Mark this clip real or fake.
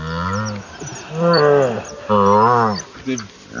real